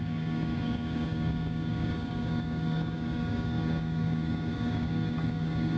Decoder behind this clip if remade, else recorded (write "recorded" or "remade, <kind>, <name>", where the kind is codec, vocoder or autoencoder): remade, codec, DAC